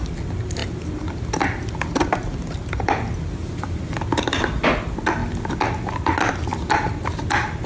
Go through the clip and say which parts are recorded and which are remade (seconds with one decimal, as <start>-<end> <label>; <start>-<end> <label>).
0.0-7.7 recorded